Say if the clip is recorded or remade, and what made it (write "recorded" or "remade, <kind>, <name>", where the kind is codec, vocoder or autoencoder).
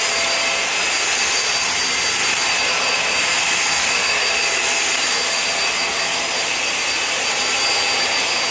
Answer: recorded